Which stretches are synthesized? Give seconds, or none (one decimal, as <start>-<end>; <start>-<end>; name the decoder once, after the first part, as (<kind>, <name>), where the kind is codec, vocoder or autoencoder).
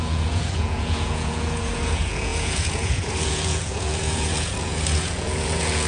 0.0-5.9 (vocoder, Vocos)